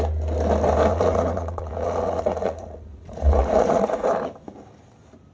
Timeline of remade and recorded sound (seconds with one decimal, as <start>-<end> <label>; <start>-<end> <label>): 0.0-0.9 recorded; 0.9-4.1 remade; 4.1-5.3 recorded